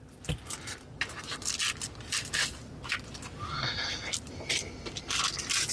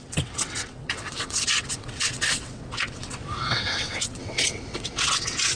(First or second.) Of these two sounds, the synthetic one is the second